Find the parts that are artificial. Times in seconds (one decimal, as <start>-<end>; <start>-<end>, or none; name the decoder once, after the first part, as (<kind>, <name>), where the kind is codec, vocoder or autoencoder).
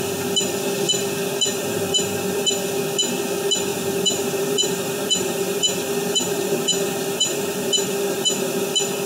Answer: 1.5-2.5 (vocoder, BigVGAN v2); 3.7-8.7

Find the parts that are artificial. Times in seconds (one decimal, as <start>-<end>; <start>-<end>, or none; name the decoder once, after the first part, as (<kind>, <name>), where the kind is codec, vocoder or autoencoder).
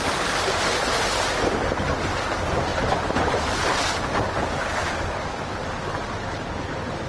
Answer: none